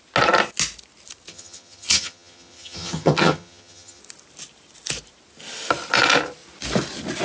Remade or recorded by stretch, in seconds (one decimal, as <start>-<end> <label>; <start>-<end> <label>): 0.0-1.3 recorded; 1.3-4.0 remade; 4.0-7.2 recorded